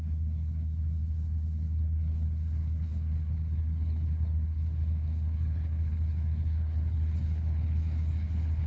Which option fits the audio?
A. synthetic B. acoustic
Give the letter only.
A